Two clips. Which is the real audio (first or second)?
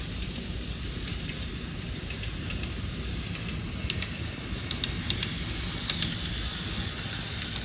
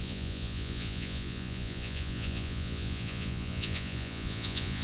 first